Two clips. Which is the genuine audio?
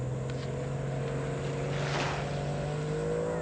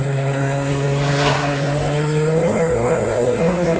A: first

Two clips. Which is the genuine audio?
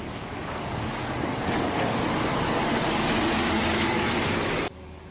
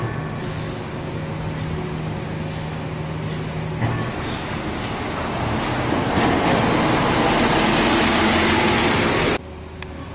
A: second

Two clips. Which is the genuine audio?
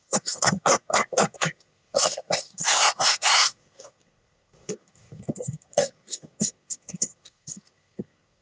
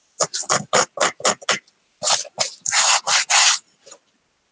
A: second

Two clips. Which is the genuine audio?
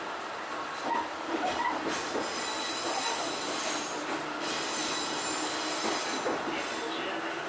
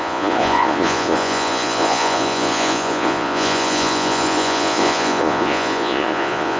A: first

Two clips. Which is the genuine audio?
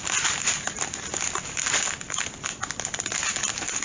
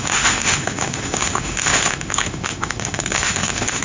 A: first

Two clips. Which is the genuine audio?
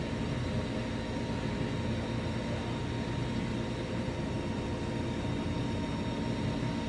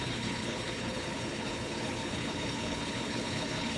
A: first